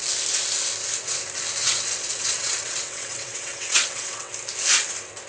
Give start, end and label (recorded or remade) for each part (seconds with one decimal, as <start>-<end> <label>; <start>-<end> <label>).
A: 0.0-1.6 recorded; 1.6-4.3 remade; 4.3-5.3 recorded